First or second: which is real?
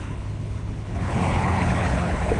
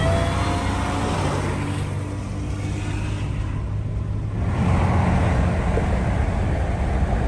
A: second